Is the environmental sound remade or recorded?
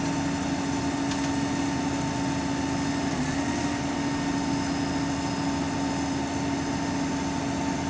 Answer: recorded